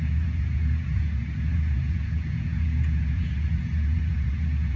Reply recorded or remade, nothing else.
remade